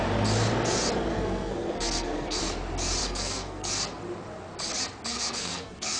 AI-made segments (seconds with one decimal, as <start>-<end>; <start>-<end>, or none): 1.1-2.4; 3.0-3.7; 5.1-6.0